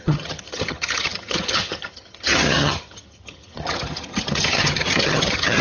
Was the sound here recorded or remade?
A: remade